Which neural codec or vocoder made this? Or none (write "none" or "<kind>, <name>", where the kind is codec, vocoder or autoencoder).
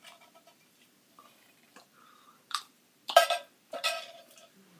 vocoder, BigVGAN v2